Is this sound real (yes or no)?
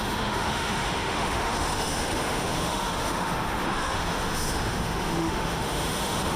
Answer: no